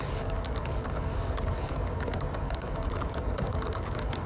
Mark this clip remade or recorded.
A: remade